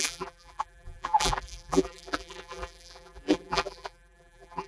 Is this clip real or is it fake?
fake